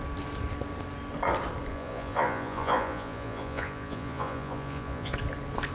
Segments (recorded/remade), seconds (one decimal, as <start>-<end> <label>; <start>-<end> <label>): 0.0-1.7 recorded; 1.7-5.1 remade; 5.1-5.7 recorded